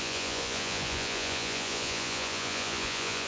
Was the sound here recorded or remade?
remade